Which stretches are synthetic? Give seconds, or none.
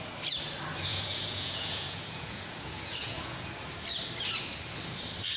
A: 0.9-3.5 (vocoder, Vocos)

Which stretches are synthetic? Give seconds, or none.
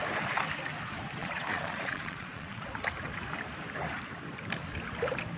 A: 1.2-2.7 (vocoder, Vocos)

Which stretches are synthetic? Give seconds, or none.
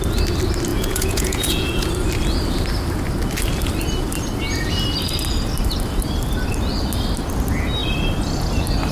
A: 0.7-1.9 (vocoder, Vocos)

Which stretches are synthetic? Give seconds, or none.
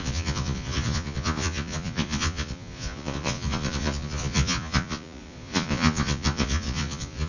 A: 0.0-7.3 (vocoder, Vocos)